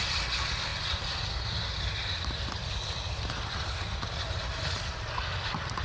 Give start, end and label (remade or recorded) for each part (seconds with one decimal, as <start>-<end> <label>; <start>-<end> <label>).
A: 0.0-5.8 recorded